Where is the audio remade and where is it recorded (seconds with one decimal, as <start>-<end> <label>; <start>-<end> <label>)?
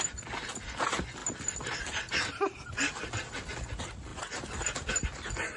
0.0-5.6 recorded